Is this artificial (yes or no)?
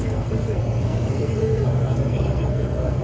yes